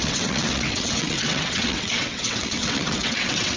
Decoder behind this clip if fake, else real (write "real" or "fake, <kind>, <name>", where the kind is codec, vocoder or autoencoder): fake, vocoder, WaveNeXt